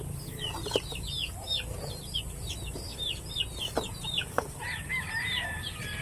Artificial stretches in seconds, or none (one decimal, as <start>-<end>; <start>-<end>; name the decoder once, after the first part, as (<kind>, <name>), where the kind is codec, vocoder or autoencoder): none